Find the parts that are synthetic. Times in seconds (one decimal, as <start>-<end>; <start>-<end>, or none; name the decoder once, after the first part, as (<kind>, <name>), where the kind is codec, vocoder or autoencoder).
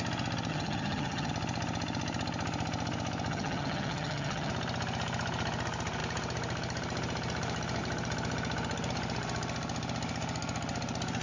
0.5-1.3 (vocoder, HiFi-GAN); 3.3-4.5